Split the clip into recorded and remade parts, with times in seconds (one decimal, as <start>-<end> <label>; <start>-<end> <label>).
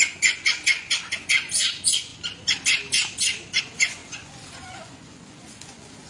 0.0-2.1 remade; 2.1-3.6 recorded; 3.6-6.1 remade